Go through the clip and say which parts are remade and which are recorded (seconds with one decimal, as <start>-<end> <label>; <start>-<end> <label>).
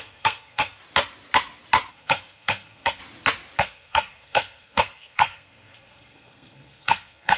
0.0-0.8 remade; 0.8-1.9 recorded; 1.9-3.0 remade; 3.0-3.6 recorded; 3.6-7.4 remade